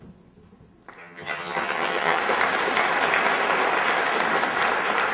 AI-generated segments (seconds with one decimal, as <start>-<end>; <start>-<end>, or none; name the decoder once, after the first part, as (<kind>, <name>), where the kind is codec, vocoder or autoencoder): 1.0-2.2 (vocoder, HiFi-GAN)